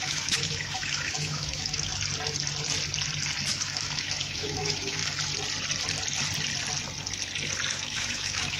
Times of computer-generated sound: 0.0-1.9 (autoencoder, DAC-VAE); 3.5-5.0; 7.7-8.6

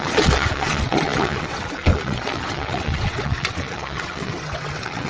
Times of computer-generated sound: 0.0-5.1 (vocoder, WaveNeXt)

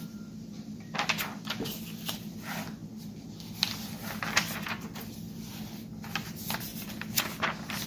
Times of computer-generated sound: none

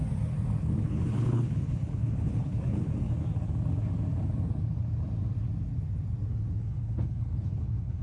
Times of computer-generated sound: 0.6-2.9 (codec, HILCodec); 6.6-8.0

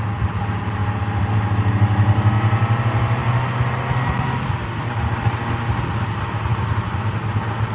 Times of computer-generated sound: none

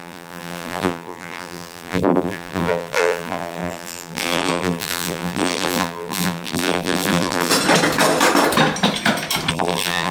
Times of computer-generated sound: 0.0-7.5 (vocoder, BigVGAN v2); 9.5-10.1